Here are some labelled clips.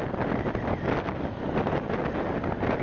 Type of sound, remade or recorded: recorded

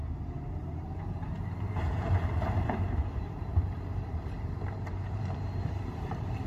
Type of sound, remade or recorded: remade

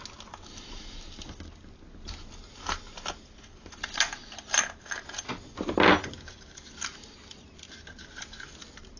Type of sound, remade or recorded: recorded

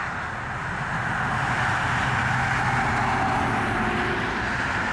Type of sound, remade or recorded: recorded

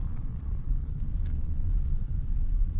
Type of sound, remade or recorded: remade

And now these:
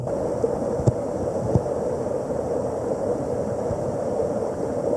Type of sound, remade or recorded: recorded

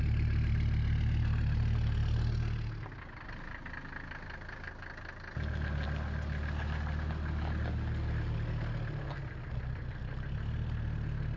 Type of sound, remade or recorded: recorded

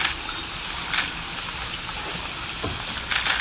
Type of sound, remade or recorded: recorded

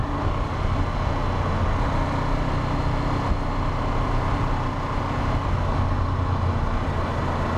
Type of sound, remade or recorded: recorded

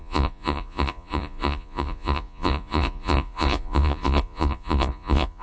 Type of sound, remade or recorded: remade